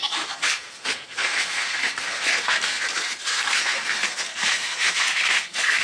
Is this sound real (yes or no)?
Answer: no